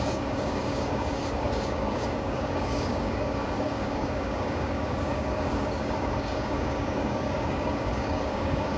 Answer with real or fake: fake